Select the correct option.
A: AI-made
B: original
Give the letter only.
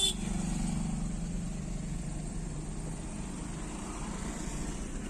B